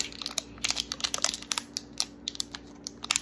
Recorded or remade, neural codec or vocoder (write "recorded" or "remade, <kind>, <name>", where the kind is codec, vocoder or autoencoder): recorded